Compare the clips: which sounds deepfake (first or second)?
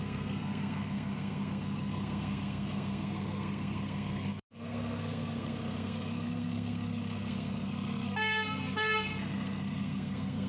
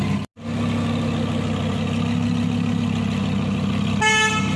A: first